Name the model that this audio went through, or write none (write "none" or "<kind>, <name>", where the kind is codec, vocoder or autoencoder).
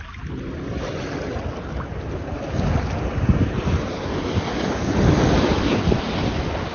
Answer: none